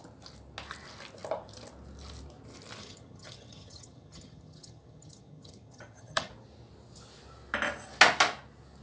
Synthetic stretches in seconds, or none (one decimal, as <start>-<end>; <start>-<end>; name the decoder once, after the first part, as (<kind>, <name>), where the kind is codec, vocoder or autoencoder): 2.8-6.3 (vocoder, HiFi-GAN)